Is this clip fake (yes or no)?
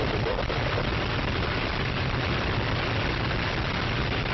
no